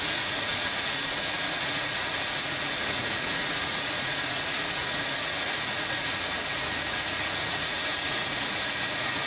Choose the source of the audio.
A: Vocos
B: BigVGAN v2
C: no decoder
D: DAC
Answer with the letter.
A